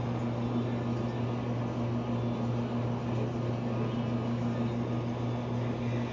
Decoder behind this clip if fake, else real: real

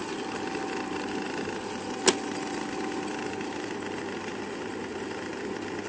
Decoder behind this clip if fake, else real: real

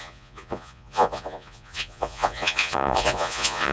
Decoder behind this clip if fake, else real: fake, vocoder, Vocos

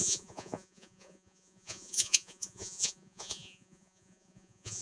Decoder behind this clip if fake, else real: fake, vocoder, Vocos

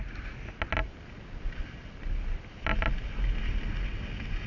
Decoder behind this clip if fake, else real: real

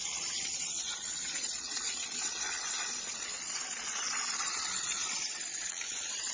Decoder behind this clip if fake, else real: fake, vocoder, Vocos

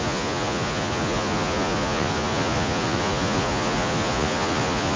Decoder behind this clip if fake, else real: fake, vocoder, Vocos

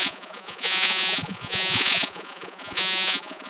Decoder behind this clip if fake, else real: fake, vocoder, Vocos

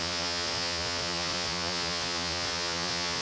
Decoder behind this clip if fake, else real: fake, vocoder, Vocos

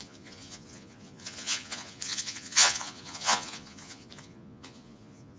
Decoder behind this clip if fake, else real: fake, vocoder, Vocos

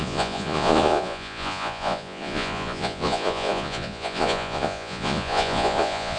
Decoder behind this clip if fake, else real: fake, vocoder, Vocos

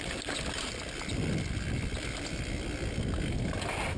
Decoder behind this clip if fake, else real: real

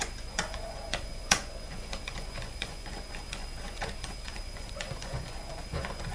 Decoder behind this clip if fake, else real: fake, vocoder, Vocos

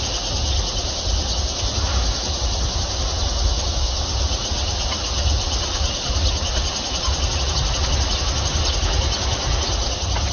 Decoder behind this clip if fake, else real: real